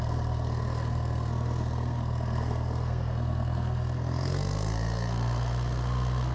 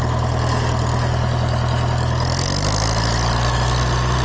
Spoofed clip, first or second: first